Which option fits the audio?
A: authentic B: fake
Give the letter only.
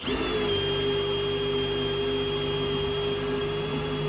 A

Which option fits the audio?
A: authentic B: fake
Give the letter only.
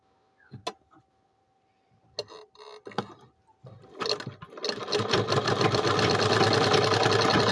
A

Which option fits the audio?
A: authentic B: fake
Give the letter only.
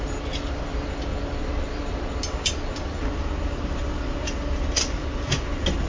A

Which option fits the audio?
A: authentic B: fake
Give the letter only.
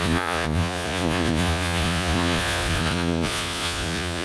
B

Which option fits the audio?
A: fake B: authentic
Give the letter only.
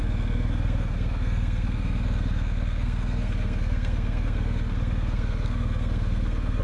A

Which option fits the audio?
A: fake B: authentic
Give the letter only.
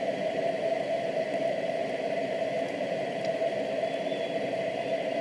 A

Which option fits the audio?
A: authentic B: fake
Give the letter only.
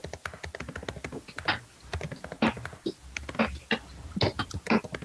A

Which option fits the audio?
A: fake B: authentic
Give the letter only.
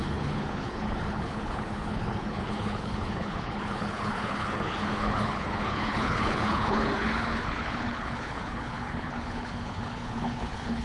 A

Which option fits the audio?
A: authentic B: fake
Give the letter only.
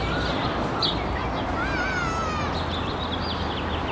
A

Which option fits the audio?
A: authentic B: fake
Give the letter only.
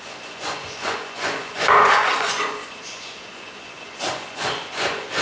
B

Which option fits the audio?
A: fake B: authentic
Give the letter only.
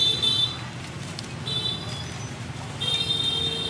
B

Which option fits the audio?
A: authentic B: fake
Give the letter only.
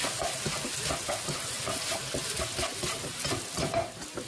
A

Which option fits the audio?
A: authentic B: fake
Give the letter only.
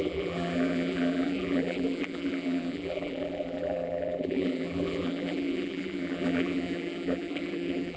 B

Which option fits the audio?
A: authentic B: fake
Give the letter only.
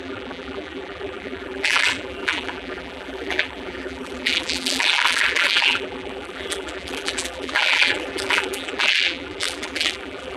B